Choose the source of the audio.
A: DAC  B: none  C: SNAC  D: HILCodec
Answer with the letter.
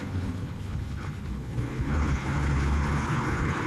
D